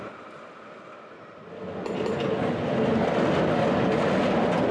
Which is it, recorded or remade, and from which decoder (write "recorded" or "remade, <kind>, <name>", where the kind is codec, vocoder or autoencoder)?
recorded